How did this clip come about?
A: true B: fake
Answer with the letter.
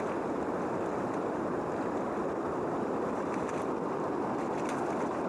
A